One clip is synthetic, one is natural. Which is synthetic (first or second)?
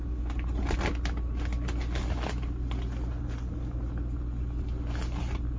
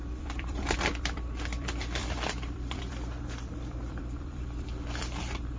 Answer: second